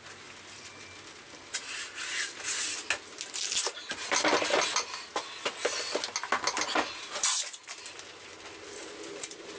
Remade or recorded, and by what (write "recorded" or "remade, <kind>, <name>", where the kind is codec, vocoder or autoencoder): recorded